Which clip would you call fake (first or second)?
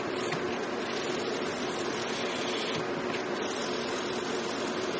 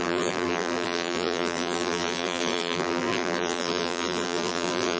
second